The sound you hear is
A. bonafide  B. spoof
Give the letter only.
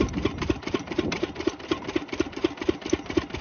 B